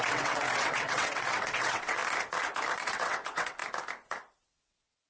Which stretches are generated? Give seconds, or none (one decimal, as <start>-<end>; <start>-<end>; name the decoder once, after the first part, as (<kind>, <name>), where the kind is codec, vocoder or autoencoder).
0.0-2.0 (vocoder, WaveNeXt); 2.7-3.6; 4.6-5.1